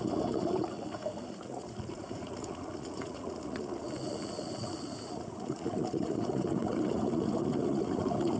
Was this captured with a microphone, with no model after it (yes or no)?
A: no